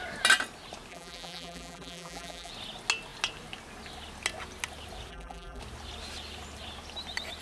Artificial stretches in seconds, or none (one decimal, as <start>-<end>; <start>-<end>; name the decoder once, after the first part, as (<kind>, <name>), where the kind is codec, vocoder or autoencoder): 0.9-2.5 (vocoder, BigVGAN v2); 5.1-5.6